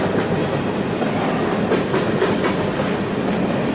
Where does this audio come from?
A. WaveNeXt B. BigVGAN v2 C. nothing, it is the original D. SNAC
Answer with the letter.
C